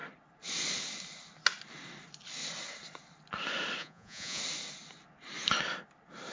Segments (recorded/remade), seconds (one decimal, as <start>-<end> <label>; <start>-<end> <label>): 0.0-3.8 recorded; 3.8-4.4 remade; 4.4-6.3 recorded